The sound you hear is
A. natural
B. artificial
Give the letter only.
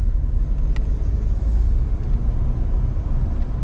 A